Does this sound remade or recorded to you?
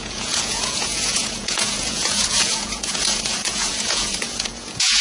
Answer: remade